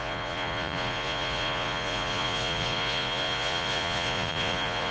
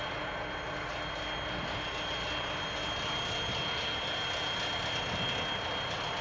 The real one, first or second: second